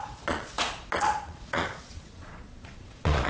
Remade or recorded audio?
remade